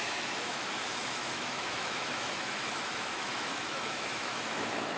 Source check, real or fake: fake